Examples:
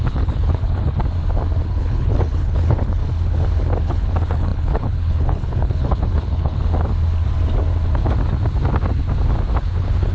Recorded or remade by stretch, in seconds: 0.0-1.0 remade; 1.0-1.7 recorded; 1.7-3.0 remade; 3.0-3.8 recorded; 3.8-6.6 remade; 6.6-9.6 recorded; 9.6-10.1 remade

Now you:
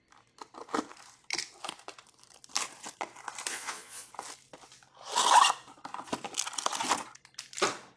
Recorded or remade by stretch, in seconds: 0.0-3.5 recorded; 3.5-4.1 remade; 4.1-8.0 recorded

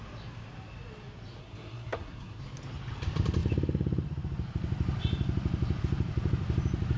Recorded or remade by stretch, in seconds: 0.0-1.4 recorded; 1.4-2.4 remade; 2.4-7.0 recorded